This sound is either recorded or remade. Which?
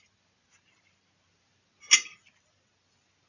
recorded